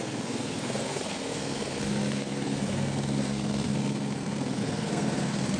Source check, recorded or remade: remade